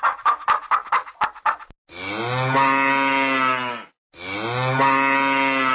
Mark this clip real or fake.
real